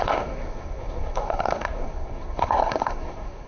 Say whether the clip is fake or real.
fake